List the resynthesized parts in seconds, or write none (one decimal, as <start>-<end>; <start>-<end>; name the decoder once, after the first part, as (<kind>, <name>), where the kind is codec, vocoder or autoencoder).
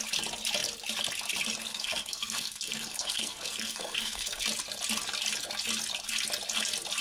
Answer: 1.7-4.4 (codec, SNAC)